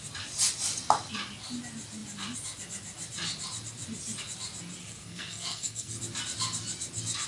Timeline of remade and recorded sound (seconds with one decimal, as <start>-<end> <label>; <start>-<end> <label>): 0.0-4.8 recorded; 4.8-6.0 remade; 6.0-7.3 recorded